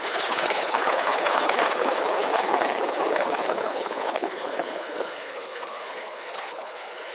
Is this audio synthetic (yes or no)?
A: yes